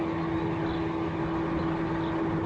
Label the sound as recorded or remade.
recorded